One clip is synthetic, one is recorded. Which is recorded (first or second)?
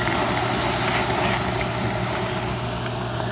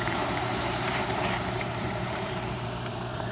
first